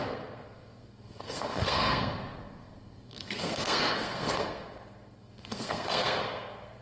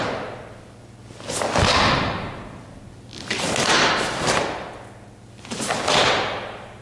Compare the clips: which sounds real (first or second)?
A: second